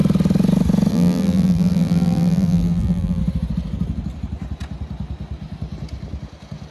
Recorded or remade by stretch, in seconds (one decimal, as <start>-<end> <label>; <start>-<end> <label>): 0.0-0.9 recorded; 0.9-3.2 remade; 3.2-6.7 recorded